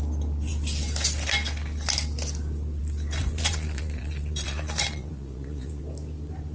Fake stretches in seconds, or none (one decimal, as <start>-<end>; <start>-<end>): 3.2-5.8